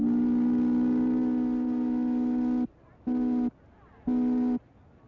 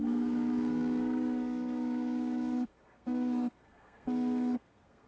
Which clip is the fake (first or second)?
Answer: second